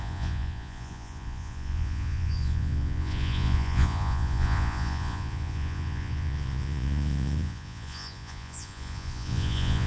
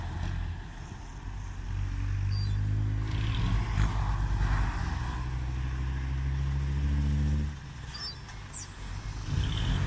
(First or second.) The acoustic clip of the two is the second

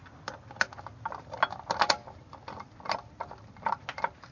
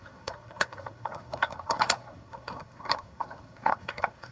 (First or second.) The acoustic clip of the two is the first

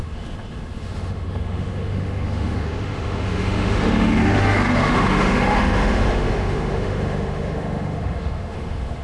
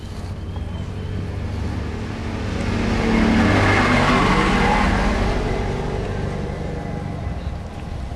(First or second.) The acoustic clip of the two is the second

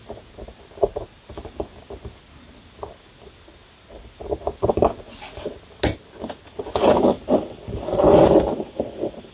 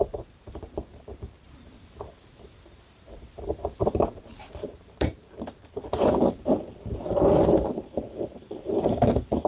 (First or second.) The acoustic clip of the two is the first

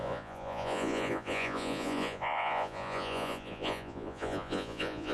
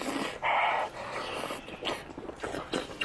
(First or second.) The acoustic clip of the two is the second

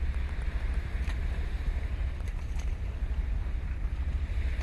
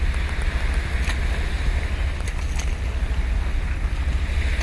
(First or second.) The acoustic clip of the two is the second